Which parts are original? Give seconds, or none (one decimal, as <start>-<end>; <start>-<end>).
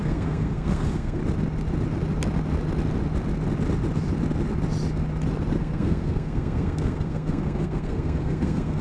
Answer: 1.2-5.6